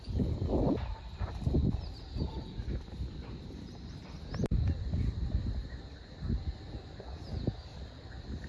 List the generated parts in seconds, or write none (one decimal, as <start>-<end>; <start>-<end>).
none